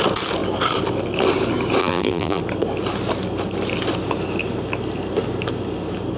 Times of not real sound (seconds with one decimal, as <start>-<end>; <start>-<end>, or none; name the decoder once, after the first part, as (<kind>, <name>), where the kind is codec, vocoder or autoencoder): 1.8-2.4 (vocoder, BigVGAN v2)